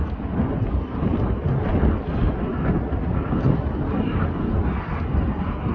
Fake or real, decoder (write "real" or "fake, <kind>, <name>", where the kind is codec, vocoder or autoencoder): real